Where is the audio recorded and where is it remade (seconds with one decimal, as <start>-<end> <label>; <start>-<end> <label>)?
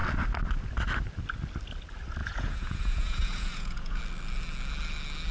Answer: 0.0-2.2 recorded; 2.2-4.0 remade; 4.0-5.3 recorded